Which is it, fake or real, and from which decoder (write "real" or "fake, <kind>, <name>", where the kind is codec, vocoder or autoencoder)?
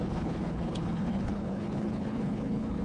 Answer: fake, codec, HILCodec